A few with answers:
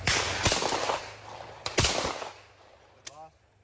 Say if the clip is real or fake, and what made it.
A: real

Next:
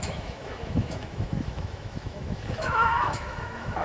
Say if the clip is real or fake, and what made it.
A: fake, autoencoder, DAC-VAE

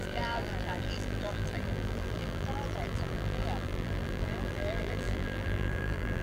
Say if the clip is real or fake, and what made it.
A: fake, vocoder, BigVGAN v2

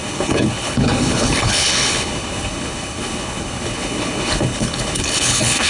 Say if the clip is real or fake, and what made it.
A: fake, codec, HILCodec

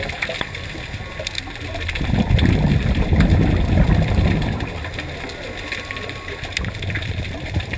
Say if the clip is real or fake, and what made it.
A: real